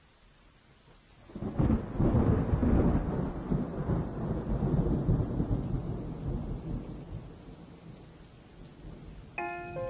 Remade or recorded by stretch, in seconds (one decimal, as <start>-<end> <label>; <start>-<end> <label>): 0.0-9.9 recorded